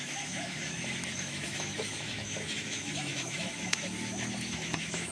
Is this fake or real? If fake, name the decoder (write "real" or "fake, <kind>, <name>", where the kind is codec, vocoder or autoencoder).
fake, autoencoder, DAC-VAE